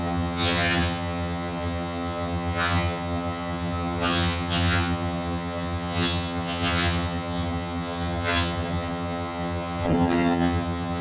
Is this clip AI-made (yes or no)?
yes